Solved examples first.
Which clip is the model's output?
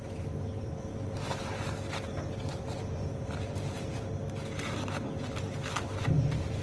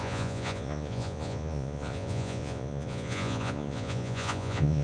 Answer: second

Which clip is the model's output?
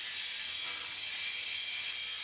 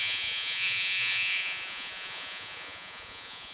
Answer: second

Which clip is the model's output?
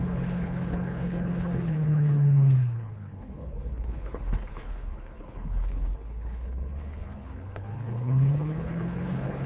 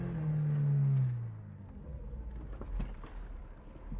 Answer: first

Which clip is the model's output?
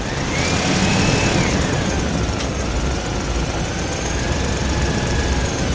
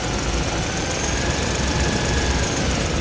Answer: second